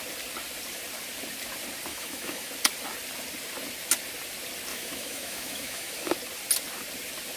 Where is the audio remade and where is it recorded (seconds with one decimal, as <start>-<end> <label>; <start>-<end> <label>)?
0.0-1.9 recorded; 1.9-2.5 remade; 2.5-4.7 recorded; 4.7-6.1 remade; 6.1-7.4 recorded